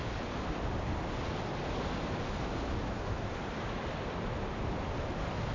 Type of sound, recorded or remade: recorded